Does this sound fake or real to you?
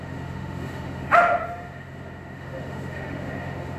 fake